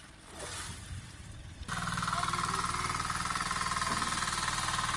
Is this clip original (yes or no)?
yes